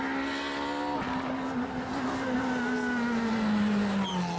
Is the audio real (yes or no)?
yes